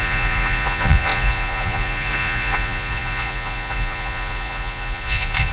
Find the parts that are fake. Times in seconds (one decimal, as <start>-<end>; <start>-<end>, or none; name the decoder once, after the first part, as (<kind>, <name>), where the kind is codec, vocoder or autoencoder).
0.0-5.5 (vocoder, Vocos)